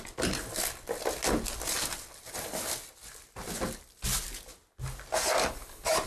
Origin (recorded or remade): recorded